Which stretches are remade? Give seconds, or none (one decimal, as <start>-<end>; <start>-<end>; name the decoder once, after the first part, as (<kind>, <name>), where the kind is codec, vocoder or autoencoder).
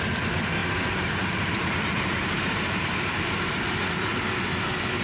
0.6-3.6 (vocoder, BigVGAN v2)